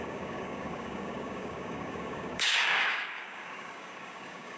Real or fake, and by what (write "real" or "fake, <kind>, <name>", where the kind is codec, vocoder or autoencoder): fake, codec, DAC